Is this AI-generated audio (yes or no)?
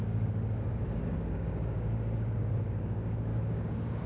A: yes